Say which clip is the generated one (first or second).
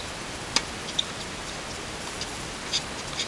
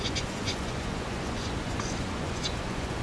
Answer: second